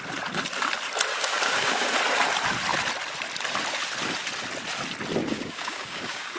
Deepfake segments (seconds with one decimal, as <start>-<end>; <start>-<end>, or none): 1.1-1.9; 5.2-6.4